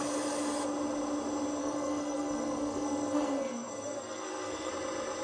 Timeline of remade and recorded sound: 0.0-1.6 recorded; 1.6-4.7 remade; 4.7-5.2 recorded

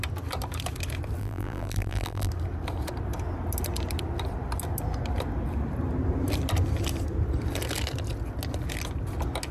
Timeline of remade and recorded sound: 0.0-1.2 recorded; 1.2-2.3 remade; 2.3-9.5 recorded

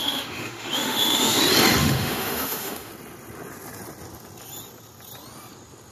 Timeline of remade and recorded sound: 0.0-1.4 remade; 1.4-1.8 recorded; 1.8-2.9 remade; 2.9-5.9 recorded

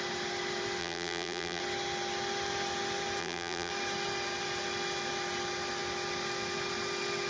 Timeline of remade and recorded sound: 0.0-0.8 recorded; 0.8-1.6 remade; 1.6-3.2 recorded; 3.2-3.7 remade; 3.7-7.3 recorded

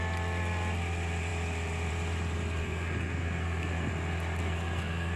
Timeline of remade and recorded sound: 0.0-2.6 recorded; 2.6-3.9 remade; 3.9-4.4 recorded; 4.4-5.2 remade